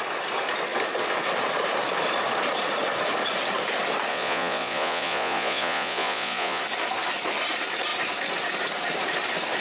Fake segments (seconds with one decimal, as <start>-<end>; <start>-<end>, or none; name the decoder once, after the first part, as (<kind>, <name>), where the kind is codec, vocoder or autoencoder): 4.1-6.6 (vocoder, Vocos)